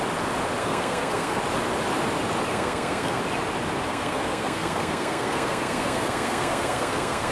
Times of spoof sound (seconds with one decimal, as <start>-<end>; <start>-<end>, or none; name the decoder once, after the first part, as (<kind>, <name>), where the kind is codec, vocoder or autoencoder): 0.6-1.4 (codec, SNAC); 2.5-3.2; 3.9-7.3